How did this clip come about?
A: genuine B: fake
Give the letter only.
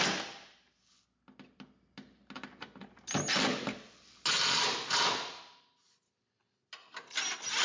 A